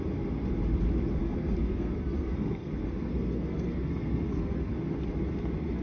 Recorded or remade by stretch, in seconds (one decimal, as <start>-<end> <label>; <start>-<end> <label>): 0.0-1.2 recorded; 1.2-4.7 remade; 4.7-5.8 recorded